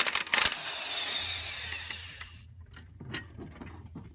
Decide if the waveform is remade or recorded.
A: recorded